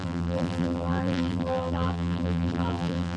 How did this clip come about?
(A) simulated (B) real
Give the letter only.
A